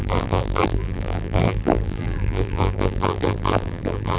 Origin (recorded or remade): remade